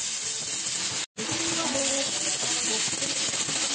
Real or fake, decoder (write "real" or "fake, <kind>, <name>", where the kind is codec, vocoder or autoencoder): real